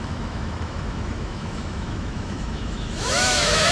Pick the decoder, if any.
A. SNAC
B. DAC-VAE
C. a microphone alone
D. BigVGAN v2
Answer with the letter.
B